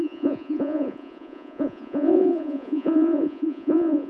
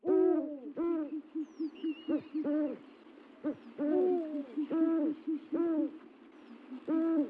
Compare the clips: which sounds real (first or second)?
second